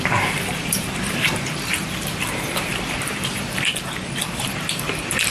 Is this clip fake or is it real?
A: fake